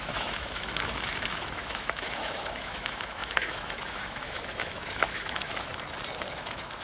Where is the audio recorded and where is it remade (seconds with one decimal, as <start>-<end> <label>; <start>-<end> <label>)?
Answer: 0.0-5.7 remade; 5.7-6.3 recorded; 6.3-6.8 remade